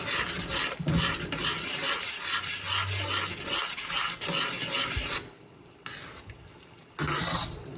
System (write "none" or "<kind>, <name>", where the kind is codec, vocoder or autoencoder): none